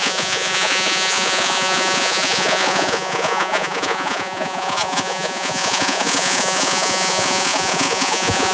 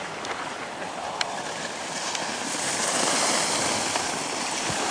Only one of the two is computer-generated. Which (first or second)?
first